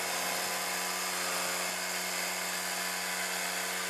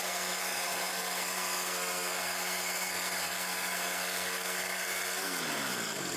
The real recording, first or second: first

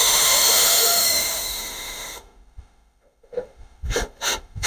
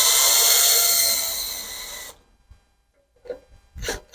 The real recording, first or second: second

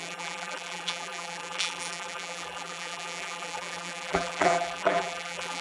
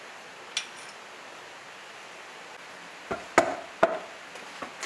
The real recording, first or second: second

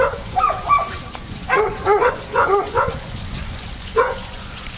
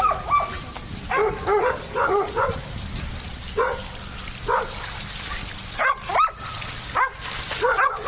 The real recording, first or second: second